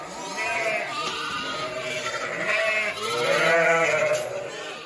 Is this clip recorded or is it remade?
recorded